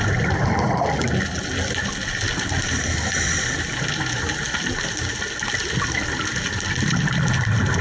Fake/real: real